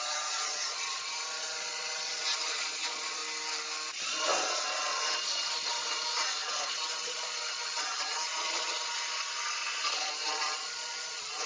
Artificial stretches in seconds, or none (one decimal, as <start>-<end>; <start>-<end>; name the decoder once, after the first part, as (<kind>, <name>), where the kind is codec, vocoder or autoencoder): 0.0-3.2 (vocoder, Vocos); 3.9-11.5